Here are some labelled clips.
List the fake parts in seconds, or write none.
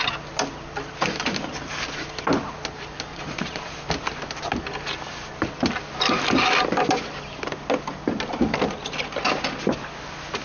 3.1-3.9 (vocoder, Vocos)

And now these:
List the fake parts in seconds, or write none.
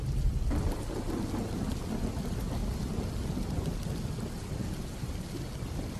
none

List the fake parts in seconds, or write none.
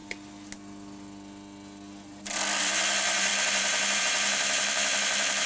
2.6-5.5 (vocoder, BigVGAN v2)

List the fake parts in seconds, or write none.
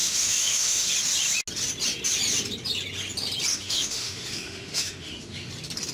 0.0-0.9 (autoencoder, DAC-VAE); 3.5-5.5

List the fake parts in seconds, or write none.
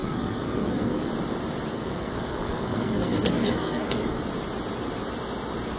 0.0-1.1 (codec, SNAC); 1.7-4.2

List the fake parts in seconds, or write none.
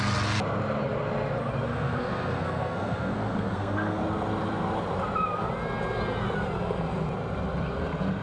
1.7-4.0 (codec, SNAC)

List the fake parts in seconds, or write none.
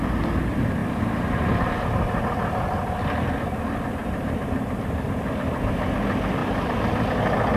4.0-5.5 (vocoder, BigVGAN v2)